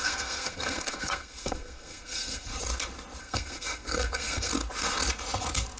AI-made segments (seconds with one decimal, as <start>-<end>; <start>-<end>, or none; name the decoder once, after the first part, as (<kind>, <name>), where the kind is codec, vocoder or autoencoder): 0.0-2.5 (codec, SNAC); 3.2-4.5